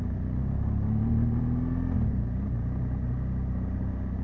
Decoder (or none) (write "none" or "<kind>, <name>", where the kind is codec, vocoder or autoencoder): none